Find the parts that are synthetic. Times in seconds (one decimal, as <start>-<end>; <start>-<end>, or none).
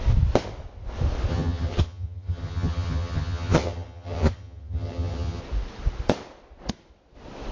1.3-5.4